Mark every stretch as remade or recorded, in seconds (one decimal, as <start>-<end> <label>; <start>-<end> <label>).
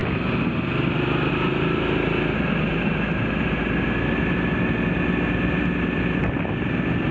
0.0-7.1 recorded